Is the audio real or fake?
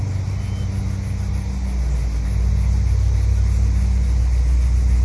real